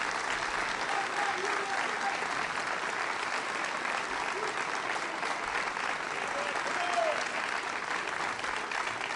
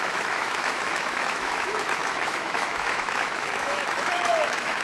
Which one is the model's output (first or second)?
second